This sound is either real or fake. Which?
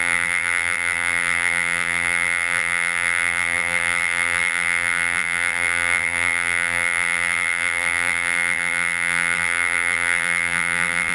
fake